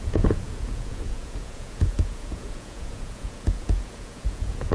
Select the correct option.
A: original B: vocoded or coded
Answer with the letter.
B